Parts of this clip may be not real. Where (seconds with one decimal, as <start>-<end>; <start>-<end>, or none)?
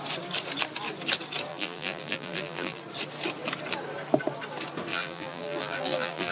1.5-2.8; 4.9-6.3